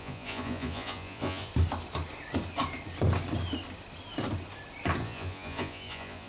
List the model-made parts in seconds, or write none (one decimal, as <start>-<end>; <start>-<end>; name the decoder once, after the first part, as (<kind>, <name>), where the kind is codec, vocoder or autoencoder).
0.0-1.5 (vocoder, Vocos); 5.0-6.3